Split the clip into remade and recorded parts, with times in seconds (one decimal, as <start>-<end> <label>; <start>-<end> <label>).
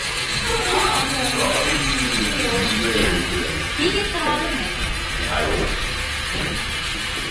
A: 0.0-4.3 remade; 4.3-5.1 recorded; 5.1-7.3 remade